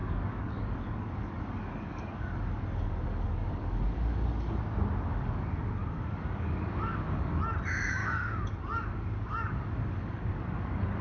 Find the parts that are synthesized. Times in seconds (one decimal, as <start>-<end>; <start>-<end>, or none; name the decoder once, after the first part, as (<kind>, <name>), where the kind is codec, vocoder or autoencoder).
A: 0.0-4.6 (codec, DAC); 5.1-7.4; 8.0-11.0